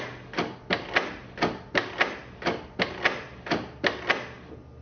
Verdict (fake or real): real